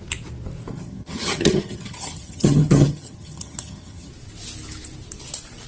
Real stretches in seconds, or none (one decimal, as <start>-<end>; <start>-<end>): 0.0-0.7; 4.1-5.7